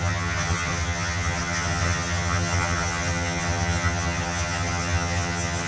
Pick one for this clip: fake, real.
fake